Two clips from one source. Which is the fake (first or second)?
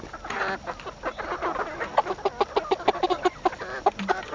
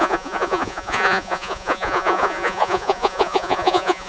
second